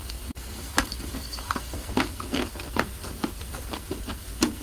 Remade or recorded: remade